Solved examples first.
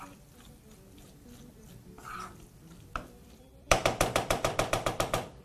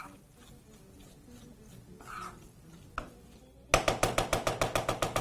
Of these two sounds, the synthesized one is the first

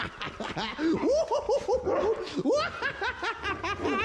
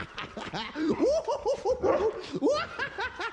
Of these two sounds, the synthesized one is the second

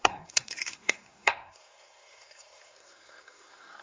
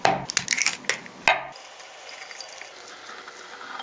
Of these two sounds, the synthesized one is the first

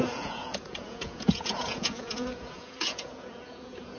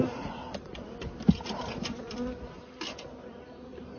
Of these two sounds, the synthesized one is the first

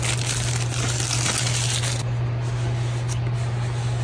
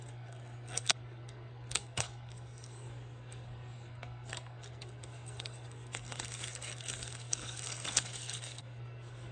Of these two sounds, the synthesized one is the second